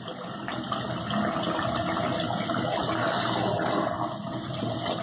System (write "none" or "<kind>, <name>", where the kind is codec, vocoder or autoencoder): none